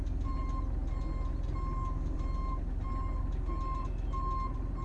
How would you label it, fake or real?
real